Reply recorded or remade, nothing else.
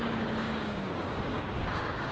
remade